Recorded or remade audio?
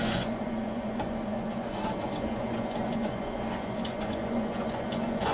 remade